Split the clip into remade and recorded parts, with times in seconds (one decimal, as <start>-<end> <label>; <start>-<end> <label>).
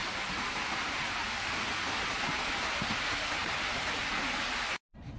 0.0-3.4 recorded; 3.4-4.0 remade; 4.0-5.2 recorded